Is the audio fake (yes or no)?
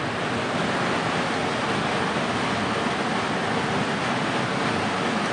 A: no